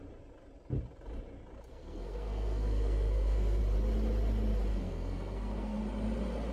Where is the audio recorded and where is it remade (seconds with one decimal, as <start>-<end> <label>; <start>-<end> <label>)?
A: 0.0-1.7 recorded; 1.7-3.6 remade; 3.6-4.7 recorded; 4.7-5.8 remade; 5.8-6.5 recorded